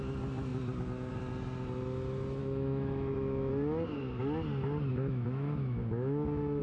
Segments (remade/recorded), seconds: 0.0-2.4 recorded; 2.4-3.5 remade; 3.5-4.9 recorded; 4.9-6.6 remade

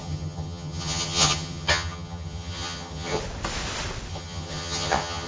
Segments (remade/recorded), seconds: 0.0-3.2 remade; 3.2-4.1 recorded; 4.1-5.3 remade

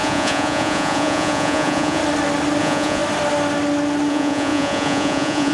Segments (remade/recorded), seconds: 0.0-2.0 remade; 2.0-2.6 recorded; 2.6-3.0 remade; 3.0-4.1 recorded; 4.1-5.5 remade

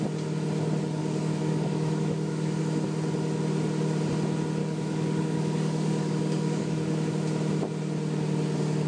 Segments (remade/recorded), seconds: 0.0-1.0 recorded; 1.0-2.6 remade; 2.6-4.6 recorded; 4.6-7.1 remade; 7.1-8.9 recorded